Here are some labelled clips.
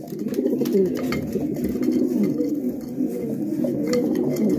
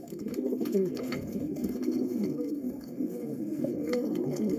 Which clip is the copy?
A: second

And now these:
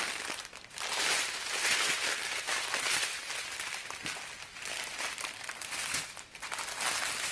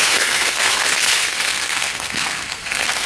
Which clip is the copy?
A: second